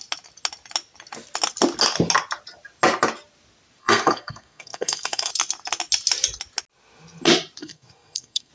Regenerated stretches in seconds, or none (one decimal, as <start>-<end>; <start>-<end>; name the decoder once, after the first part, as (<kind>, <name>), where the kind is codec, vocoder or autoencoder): 3.8-5.3 (codec, SNAC); 7.6-8.5